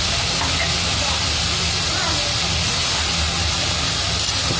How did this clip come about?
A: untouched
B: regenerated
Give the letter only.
A